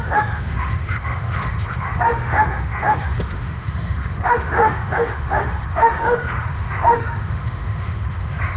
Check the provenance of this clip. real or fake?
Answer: fake